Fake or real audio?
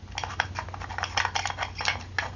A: real